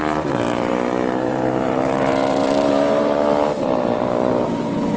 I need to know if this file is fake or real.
fake